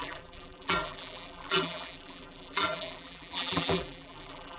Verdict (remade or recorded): remade